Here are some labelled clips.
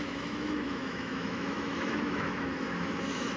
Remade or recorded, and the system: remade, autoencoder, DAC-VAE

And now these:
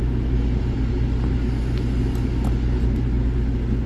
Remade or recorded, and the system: recorded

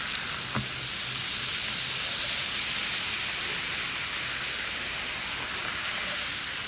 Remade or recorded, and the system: recorded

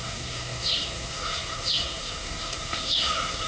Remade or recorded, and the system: remade, codec, SNAC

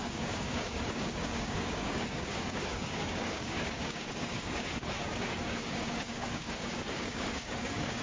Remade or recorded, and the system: remade, codec, DAC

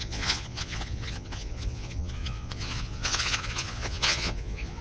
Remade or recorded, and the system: remade, vocoder, Vocos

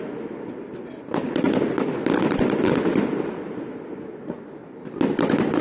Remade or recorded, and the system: recorded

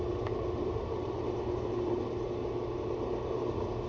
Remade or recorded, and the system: recorded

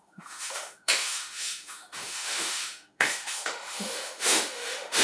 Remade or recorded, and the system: remade, autoencoder, DAC-VAE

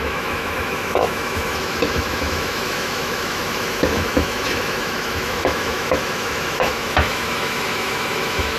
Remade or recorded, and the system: remade, autoencoder, DAC-VAE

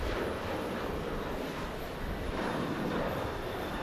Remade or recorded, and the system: remade, vocoder, BigVGAN v2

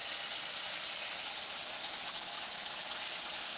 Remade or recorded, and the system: recorded